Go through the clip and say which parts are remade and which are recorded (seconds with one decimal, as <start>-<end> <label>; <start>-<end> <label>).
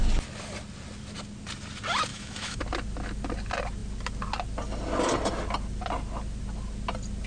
0.0-2.1 recorded; 2.1-2.6 remade; 2.6-7.3 recorded